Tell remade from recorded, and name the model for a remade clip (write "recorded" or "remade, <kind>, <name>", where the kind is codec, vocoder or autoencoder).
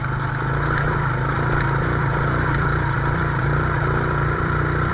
remade, vocoder, BigVGAN v2